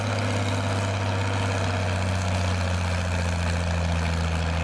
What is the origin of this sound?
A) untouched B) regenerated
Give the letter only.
A